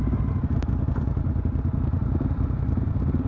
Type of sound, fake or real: real